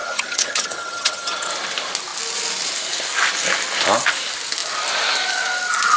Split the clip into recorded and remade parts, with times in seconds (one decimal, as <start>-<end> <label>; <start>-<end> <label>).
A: 0.0-1.5 remade; 1.5-6.0 recorded